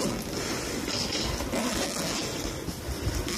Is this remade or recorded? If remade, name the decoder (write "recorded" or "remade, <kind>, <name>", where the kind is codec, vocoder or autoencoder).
recorded